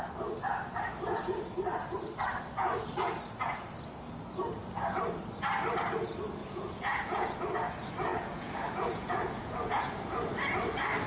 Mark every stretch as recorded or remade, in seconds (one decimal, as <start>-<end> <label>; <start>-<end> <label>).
0.0-6.4 recorded; 6.4-7.4 remade; 7.4-8.1 recorded; 8.1-9.8 remade; 9.8-11.1 recorded